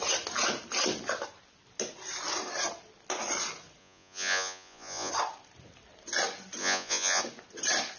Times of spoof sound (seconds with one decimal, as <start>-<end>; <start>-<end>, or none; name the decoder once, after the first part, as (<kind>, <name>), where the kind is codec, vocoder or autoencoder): 3.8-5.1 (vocoder, Vocos); 6.6-7.2